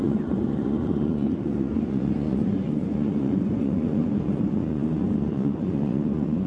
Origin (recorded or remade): remade